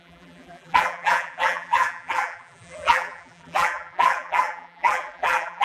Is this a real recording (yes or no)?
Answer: no